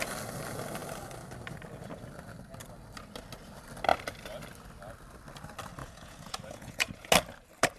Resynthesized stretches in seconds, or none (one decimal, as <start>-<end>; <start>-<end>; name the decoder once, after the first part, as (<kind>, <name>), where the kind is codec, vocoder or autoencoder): 5.8-7.1 (vocoder, Vocos)

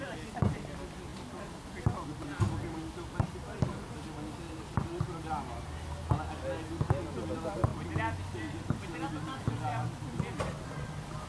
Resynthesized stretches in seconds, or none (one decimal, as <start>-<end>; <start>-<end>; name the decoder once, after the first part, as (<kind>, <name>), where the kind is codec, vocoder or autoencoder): 9.7-10.5 (vocoder, BigVGAN v2)

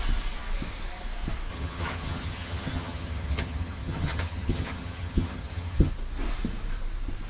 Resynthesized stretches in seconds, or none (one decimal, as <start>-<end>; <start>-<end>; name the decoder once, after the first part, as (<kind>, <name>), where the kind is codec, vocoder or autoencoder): 1.5-5.9 (vocoder, HiFi-GAN)

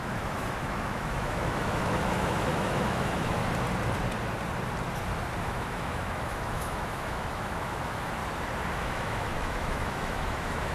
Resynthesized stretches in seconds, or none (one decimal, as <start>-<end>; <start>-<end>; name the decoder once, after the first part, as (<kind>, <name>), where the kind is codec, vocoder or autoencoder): 0.0-3.4 (autoencoder, DAC-VAE); 5.4-8.2; 8.7-10.7

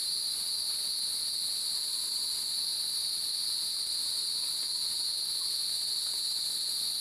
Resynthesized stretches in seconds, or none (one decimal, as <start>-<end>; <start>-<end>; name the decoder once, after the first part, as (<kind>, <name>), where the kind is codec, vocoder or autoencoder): none

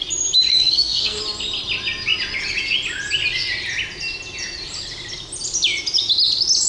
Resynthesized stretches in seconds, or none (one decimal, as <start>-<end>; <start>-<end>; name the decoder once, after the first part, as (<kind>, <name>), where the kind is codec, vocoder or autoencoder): 0.5-1.2 (codec, SNAC)

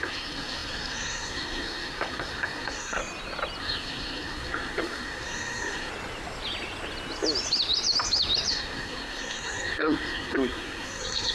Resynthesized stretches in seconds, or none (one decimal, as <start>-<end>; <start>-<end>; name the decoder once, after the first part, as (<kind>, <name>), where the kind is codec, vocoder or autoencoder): 0.0-3.0 (codec, SNAC); 3.6-5.9; 8.5-11.3

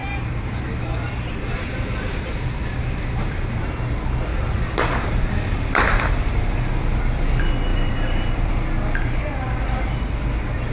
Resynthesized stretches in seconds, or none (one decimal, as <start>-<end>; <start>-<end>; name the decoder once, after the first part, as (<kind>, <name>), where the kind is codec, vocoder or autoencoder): 0.0-3.6 (vocoder, BigVGAN v2); 4.3-6.7; 7.7-8.5